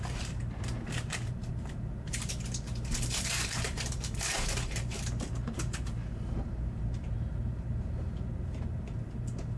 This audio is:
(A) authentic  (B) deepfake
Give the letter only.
B